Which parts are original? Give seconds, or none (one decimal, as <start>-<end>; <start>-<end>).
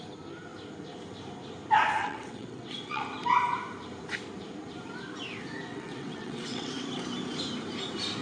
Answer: 0.0-2.0; 3.0-5.7; 6.7-8.2